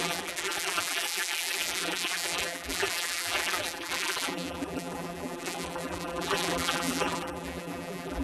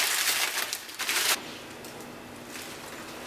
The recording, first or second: second